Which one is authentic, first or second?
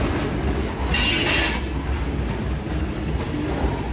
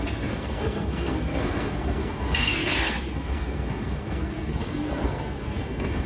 first